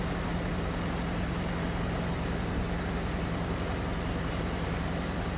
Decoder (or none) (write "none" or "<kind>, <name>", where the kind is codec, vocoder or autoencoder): none